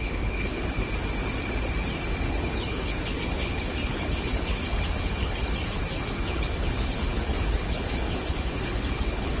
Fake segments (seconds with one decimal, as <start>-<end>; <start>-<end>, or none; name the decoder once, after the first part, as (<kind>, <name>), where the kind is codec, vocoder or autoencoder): 0.0-0.8 (codec, HILCodec); 2.3-9.4